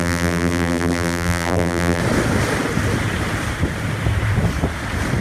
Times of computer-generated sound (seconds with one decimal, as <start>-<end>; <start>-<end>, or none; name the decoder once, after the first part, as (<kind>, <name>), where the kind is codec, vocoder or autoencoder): 0.0-2.0 (vocoder, BigVGAN v2)